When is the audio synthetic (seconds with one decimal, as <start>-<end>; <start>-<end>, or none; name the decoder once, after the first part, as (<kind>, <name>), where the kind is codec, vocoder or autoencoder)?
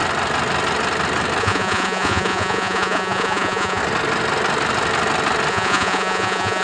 1.4-3.8 (vocoder, Vocos); 5.5-6.6